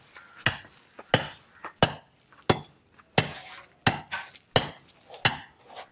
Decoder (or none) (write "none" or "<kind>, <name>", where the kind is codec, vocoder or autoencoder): none